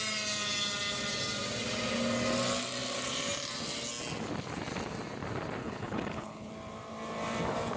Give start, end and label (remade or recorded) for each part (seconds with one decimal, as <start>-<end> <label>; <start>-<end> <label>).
0.0-5.6 recorded; 5.6-6.5 remade; 6.5-7.8 recorded